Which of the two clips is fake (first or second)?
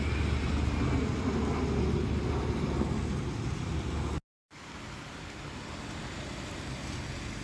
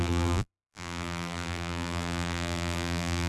second